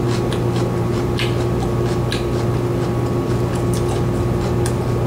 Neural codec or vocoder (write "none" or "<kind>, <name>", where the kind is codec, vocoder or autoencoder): none